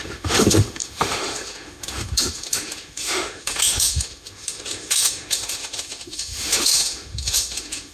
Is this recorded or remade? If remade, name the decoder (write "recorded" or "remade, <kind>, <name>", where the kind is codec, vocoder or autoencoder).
remade, autoencoder, DAC-VAE